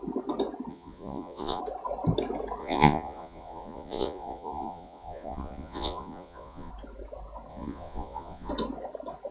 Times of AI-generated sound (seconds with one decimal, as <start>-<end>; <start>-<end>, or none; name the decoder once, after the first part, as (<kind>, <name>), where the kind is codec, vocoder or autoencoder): 0.7-1.6 (vocoder, Vocos); 2.6-6.7; 7.5-8.5